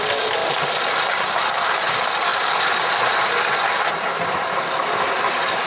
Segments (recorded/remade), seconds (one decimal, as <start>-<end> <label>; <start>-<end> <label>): 0.0-0.4 recorded; 0.4-1.2 remade; 1.2-2.3 recorded; 2.3-4.3 remade; 4.3-5.7 recorded